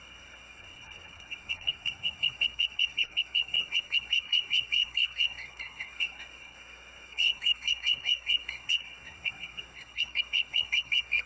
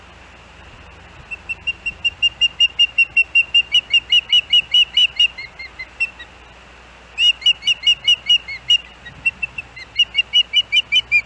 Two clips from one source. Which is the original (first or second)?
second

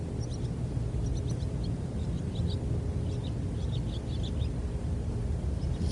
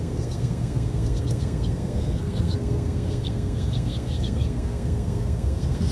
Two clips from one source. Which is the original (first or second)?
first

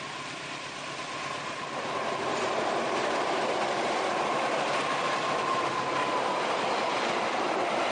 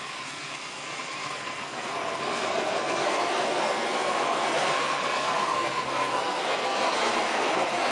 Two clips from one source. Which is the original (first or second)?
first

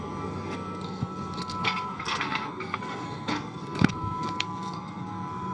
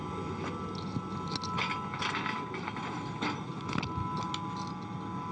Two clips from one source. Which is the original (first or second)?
second